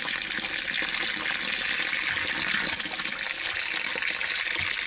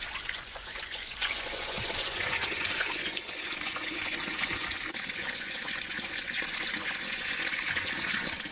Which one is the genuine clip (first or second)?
first